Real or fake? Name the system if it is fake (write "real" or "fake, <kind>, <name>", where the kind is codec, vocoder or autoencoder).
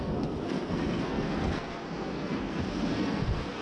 fake, codec, SNAC